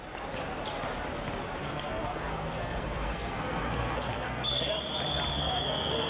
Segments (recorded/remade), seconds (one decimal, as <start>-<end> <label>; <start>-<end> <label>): 0.0-1.6 recorded; 1.6-4.7 remade; 4.7-5.3 recorded; 5.3-6.1 remade